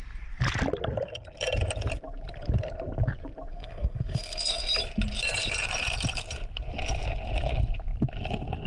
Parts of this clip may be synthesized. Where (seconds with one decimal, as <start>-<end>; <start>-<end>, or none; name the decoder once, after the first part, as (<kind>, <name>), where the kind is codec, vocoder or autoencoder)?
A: 3.5-4.7 (codec, SNAC)

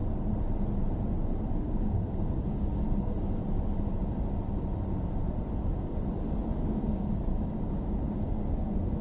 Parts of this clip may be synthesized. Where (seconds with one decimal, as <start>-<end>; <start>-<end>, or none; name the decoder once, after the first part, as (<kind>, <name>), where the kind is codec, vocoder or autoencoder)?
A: 1.5-3.4 (codec, DAC); 5.9-9.0

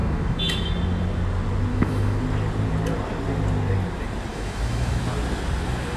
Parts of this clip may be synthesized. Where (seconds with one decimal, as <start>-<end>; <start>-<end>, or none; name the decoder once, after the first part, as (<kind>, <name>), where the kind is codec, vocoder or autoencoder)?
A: 0.0-0.7 (autoencoder, DAC-VAE); 1.7-2.2; 4.3-5.0

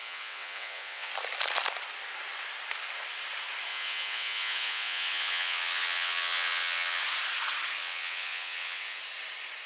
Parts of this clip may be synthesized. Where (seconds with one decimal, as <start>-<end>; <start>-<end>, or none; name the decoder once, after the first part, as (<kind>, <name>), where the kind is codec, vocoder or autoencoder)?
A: 0.0-1.1 (vocoder, WaveNeXt); 3.7-7.0; 7.8-9.0

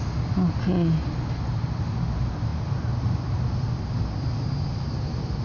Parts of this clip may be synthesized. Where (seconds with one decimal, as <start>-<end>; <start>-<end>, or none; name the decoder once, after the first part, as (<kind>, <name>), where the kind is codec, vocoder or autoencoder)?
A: none

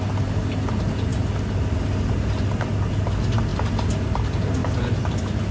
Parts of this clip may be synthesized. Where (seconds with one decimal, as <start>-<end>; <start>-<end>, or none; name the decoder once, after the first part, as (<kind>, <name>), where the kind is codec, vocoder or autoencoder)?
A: 1.1-1.8 (vocoder, BigVGAN v2); 3.5-4.1; 4.6-5.5

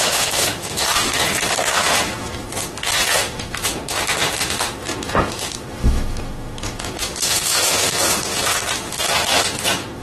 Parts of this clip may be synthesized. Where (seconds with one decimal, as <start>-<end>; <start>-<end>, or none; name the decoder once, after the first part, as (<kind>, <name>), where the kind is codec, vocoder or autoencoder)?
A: 0.0-10.0 (autoencoder, DAC-VAE)